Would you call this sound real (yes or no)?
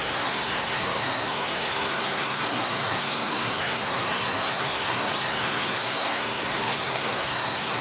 no